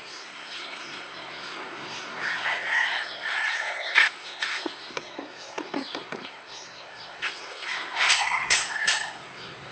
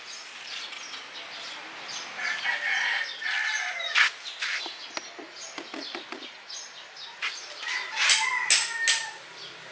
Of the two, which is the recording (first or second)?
second